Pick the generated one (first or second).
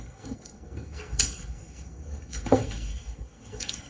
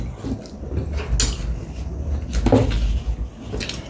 first